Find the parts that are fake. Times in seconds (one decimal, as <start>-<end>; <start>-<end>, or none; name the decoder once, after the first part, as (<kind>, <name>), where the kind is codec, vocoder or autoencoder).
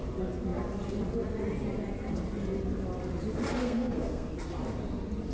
3.6-4.3 (codec, SNAC)